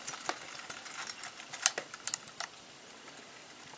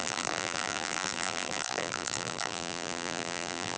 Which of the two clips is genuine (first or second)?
first